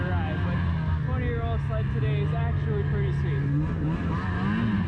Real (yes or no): yes